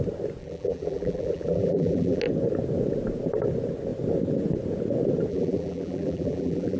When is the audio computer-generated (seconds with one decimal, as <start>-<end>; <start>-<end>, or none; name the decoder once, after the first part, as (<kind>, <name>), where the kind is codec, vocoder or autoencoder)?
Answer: 0.4-2.2 (vocoder, BigVGAN v2); 5.3-6.8